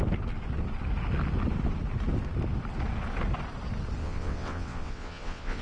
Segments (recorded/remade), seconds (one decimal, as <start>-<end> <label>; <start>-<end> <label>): 0.0-4.0 recorded; 4.0-5.6 remade